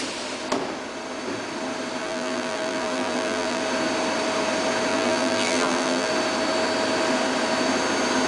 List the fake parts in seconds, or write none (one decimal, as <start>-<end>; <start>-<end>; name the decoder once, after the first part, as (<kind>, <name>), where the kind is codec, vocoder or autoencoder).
2.0-3.6 (vocoder, BigVGAN v2); 4.9-6.1